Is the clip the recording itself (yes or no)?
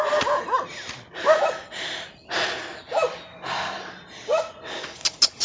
yes